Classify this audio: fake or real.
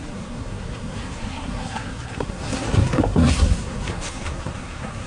fake